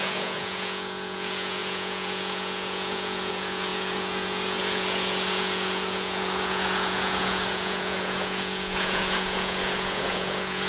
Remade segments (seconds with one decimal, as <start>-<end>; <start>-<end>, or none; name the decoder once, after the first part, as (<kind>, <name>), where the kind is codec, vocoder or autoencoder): 0.0-10.7 (vocoder, Vocos)

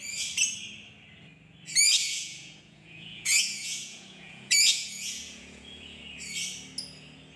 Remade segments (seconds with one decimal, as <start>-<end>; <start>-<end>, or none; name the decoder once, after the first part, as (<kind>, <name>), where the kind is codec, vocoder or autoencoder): 2.0-6.0 (vocoder, Vocos)

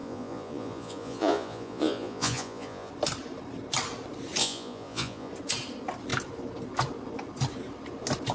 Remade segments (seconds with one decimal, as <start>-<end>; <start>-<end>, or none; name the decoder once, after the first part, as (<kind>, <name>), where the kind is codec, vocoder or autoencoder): 0.0-2.9 (vocoder, Vocos); 4.4-5.3

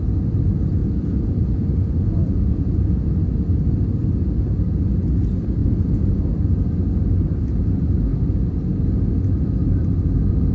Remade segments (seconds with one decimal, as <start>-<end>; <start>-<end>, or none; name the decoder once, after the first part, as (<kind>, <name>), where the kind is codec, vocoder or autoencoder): 0.8-3.1 (vocoder, Vocos); 4.2-4.8; 5.6-6.2

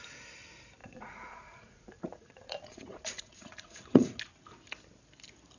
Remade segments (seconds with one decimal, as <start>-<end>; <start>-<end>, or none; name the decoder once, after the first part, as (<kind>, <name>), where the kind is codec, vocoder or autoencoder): 0.8-4.2 (vocoder, Vocos)